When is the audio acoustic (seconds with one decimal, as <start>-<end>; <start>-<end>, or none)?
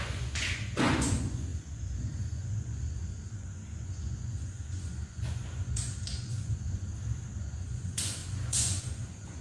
6.9-7.4